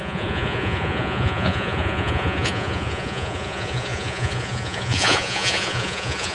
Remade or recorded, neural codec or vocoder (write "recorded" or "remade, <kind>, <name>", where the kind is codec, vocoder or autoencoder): remade, vocoder, Vocos